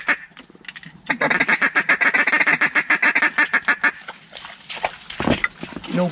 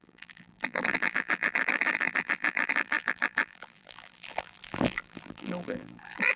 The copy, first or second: second